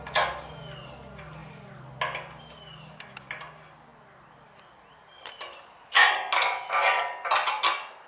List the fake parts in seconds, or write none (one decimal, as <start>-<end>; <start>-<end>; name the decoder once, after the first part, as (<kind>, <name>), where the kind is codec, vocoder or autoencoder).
none